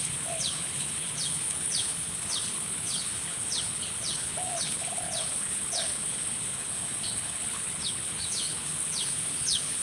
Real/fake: fake